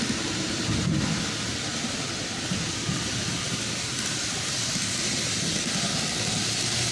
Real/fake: real